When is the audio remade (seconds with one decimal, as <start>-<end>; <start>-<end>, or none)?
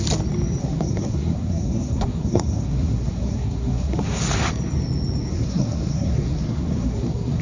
0.6-4.2; 5.3-7.4